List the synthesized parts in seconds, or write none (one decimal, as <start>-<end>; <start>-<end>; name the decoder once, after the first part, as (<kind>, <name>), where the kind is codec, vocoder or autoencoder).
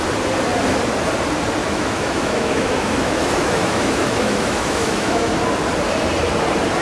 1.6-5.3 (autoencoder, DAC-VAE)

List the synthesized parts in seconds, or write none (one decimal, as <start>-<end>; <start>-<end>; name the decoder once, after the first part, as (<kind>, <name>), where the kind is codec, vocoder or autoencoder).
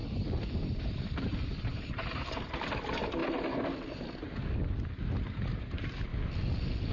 0.0-3.2 (vocoder, BigVGAN v2); 5.0-6.1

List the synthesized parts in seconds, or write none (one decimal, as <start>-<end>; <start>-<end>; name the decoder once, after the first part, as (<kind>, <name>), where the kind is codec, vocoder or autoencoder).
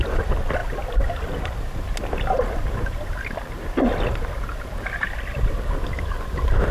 none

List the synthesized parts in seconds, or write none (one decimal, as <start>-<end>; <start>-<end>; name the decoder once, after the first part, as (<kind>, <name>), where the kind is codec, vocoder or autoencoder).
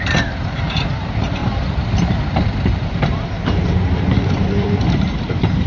0.0-1.4 (vocoder, BigVGAN v2); 2.2-5.7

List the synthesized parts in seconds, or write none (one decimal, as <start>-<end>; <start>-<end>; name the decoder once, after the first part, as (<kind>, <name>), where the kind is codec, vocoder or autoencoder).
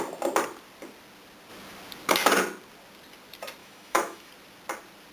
3.6-4.3 (autoencoder, DAC-VAE)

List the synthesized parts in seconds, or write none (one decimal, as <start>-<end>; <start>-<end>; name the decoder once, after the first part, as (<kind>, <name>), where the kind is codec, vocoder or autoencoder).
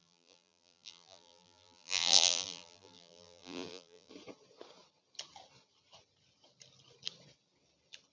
0.0-4.1 (vocoder, BigVGAN v2)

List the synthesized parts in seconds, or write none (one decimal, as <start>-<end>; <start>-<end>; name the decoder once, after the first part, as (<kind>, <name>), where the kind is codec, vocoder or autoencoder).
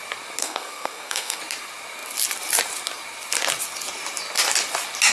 0.4-1.4 (codec, SNAC)